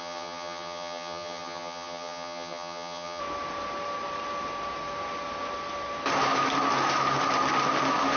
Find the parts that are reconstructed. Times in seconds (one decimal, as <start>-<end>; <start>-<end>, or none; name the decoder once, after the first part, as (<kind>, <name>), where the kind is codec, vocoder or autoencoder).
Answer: 0.0-3.2 (vocoder, HiFi-GAN)